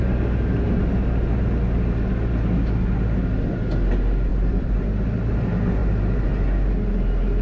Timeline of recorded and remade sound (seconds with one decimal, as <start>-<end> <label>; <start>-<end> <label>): 0.0-4.3 recorded; 4.3-4.8 remade; 4.8-5.8 recorded; 5.8-6.3 remade; 6.3-7.4 recorded